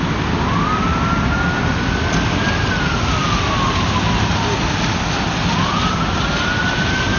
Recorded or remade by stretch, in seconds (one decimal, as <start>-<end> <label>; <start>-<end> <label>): 0.0-7.2 recorded